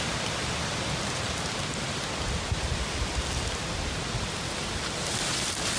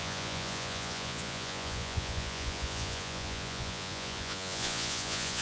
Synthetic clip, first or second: second